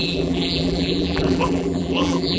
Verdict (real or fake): fake